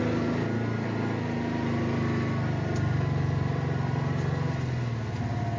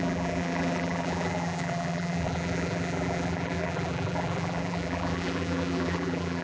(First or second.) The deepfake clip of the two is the second